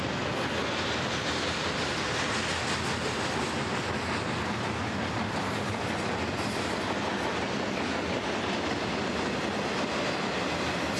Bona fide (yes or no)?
yes